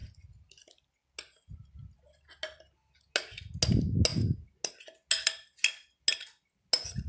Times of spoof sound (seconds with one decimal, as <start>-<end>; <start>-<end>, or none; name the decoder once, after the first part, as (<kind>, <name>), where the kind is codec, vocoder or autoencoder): none